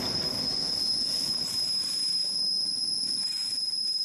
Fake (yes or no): no